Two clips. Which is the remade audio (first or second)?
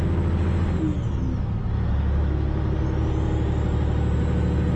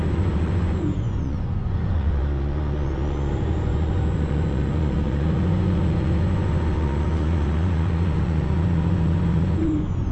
second